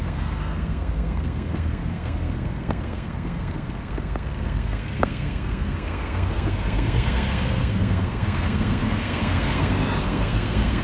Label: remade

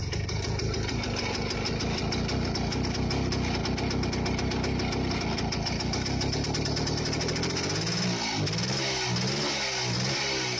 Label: recorded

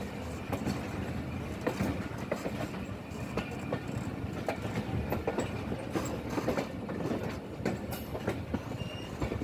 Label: recorded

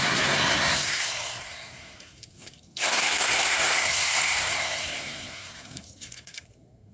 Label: remade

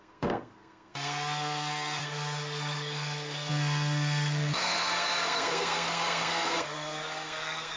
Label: remade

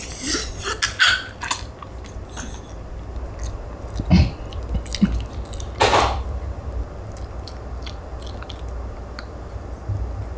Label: recorded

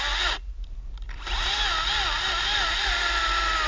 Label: recorded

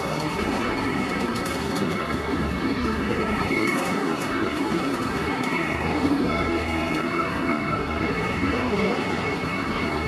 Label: remade